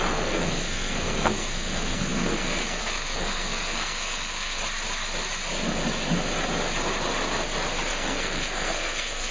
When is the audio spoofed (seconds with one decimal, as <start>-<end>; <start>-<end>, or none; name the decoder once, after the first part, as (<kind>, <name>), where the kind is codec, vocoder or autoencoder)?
0.0-4.6 (codec, SNAC); 7.9-9.3

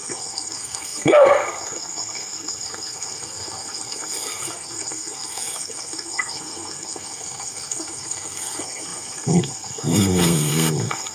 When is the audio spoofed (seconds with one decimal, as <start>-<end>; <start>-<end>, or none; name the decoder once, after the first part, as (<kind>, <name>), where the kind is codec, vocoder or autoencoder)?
0.0-11.1 (codec, SNAC)